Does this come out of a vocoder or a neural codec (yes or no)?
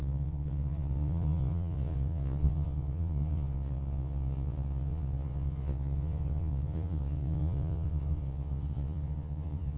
yes